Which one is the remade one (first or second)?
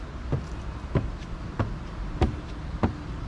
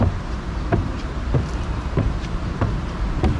second